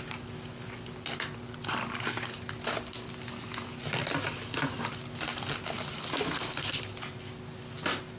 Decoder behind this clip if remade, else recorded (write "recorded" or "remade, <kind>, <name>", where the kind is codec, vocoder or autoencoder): recorded